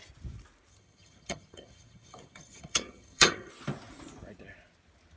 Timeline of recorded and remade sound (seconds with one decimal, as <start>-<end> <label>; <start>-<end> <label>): 0.0-0.7 recorded; 0.7-3.5 remade; 3.5-5.2 recorded